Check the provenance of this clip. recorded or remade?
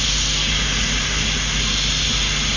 recorded